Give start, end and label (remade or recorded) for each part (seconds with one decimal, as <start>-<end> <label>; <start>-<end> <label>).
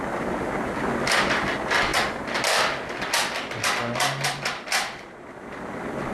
0.0-6.1 recorded